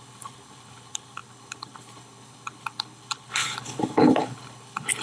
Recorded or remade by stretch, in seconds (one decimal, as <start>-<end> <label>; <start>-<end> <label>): 0.0-5.0 remade

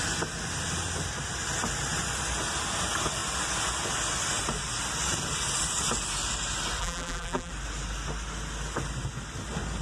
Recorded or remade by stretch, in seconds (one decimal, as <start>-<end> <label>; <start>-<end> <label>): 0.0-6.8 recorded; 6.8-7.5 remade; 7.5-9.8 recorded

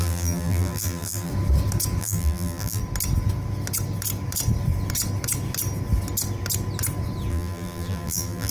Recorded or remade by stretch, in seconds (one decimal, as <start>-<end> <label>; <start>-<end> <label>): 0.0-1.3 remade; 1.3-2.0 recorded; 2.0-2.8 remade; 2.8-7.3 recorded; 7.3-8.5 remade

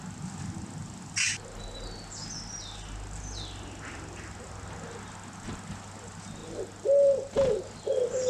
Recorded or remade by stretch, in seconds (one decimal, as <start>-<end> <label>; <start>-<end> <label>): 0.0-8.3 recorded